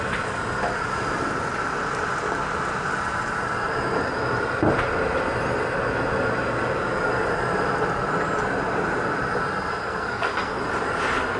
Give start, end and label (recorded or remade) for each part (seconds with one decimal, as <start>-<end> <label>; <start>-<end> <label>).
0.0-9.8 recorded; 9.8-10.6 remade; 10.6-11.4 recorded